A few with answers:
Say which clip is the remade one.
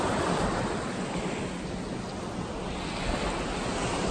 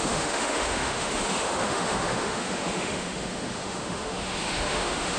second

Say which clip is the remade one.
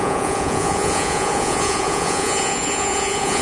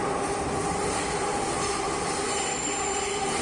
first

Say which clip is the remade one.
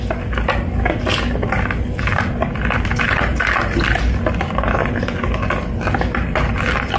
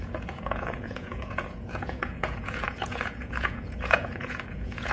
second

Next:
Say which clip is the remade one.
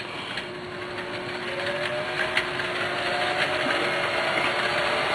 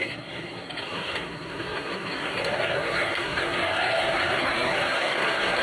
second